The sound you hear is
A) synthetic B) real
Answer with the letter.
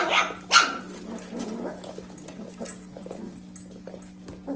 B